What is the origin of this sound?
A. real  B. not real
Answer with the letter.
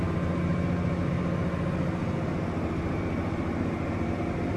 A